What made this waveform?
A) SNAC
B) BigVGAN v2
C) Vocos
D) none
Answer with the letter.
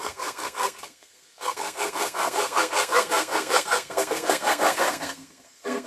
A